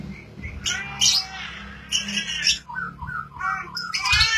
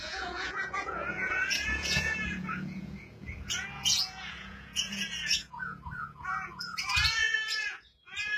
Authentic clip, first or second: first